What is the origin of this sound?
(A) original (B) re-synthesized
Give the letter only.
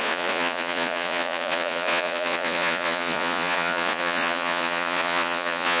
B